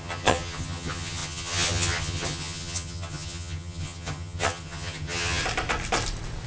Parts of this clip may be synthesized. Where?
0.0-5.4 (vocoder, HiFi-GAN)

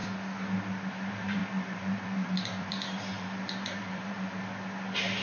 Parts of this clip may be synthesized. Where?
0.9-4.4 (vocoder, BigVGAN v2)

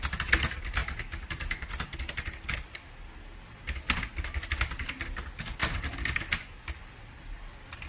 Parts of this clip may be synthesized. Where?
none

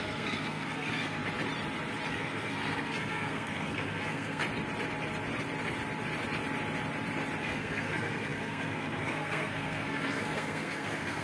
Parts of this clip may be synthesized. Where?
0.0-1.2 (codec, SNAC); 2.1-4.4; 7.4-11.2

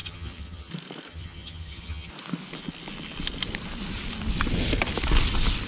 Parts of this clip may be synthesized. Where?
0.0-0.7 (vocoder, HiFi-GAN); 1.1-2.1

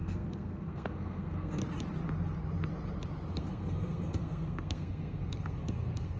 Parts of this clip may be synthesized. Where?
0.0-1.6 (codec, SNAC); 3.3-6.2

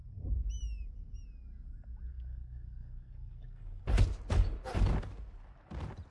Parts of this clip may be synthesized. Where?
2.1-3.8 (codec, SNAC)

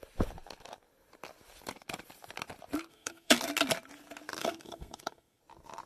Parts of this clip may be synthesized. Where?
2.9-3.4 (codec, SNAC); 4.4-5.4